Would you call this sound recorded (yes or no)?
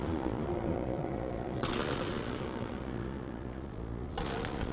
no